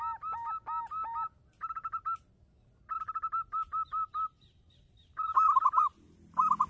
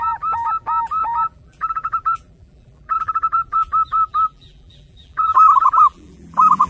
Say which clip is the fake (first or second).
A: second